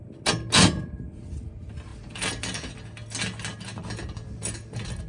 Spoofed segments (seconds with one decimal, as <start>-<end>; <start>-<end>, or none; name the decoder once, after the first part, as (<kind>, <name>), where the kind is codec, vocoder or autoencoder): none